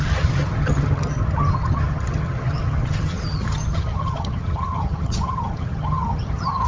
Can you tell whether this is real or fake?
fake